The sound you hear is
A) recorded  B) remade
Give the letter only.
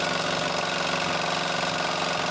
A